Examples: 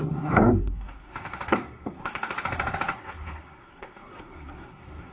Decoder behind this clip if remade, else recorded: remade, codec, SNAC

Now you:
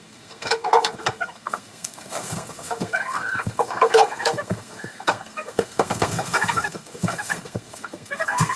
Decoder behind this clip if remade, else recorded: remade, codec, SNAC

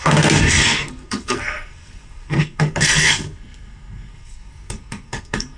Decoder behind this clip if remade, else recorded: remade, codec, SNAC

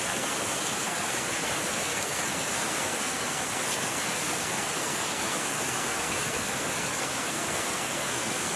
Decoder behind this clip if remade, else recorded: remade, codec, SNAC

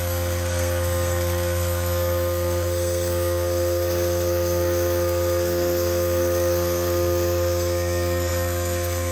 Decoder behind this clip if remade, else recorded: remade, codec, SNAC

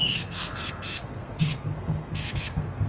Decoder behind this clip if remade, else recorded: remade, codec, SNAC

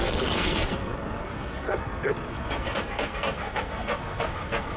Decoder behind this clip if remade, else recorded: remade, codec, SNAC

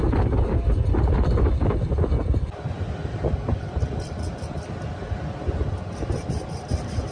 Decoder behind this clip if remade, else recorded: recorded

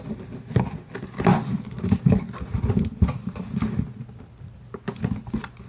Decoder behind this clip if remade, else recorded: recorded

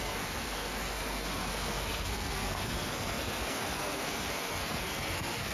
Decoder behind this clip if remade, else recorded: remade, codec, SNAC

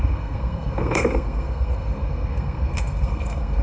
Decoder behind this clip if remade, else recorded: remade, codec, SNAC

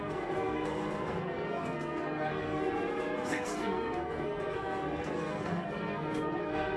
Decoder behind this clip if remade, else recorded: remade, codec, SNAC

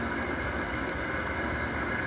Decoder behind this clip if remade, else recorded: recorded